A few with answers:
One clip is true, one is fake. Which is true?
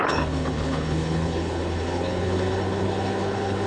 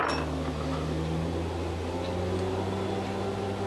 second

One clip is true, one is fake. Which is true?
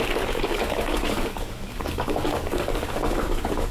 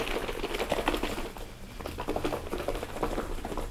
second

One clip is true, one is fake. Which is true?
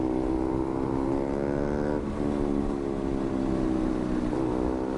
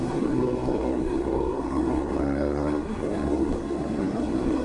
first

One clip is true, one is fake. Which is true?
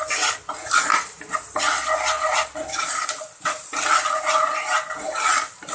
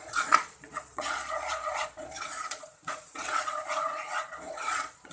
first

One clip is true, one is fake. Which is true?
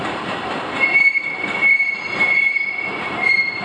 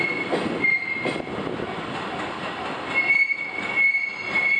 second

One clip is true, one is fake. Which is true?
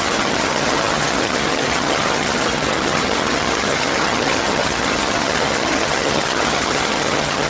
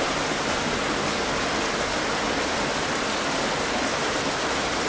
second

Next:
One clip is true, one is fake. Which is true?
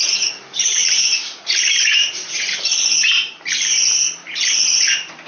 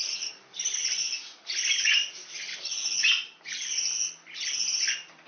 second